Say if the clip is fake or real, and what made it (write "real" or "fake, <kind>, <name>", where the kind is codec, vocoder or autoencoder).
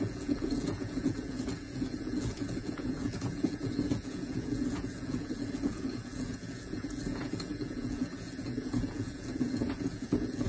fake, vocoder, Vocos